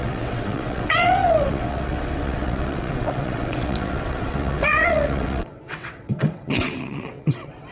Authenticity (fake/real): fake